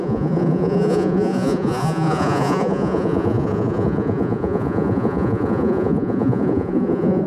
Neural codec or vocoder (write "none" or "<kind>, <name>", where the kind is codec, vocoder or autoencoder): vocoder, Vocos